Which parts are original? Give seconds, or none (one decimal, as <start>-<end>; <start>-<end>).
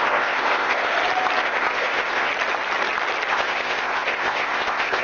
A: 0.9-1.4; 2.3-3.3